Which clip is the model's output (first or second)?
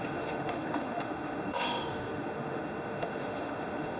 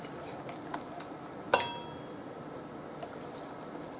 first